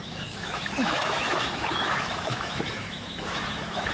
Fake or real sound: fake